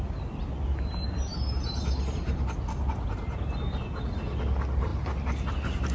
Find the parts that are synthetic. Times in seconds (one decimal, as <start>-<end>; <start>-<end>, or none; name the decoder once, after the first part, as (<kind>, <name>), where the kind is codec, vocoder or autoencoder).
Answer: none